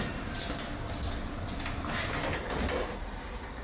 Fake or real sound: real